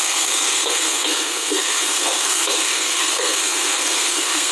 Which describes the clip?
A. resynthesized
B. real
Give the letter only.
A